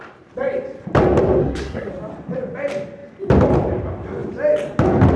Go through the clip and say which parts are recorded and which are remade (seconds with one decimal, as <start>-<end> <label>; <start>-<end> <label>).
0.0-1.4 recorded; 1.4-1.9 remade; 1.9-5.2 recorded